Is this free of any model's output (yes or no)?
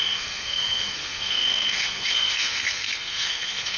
no